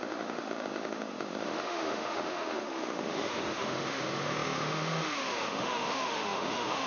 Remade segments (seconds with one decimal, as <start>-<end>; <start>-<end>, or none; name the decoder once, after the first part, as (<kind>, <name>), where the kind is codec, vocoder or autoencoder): 0.0-6.9 (autoencoder, DAC-VAE)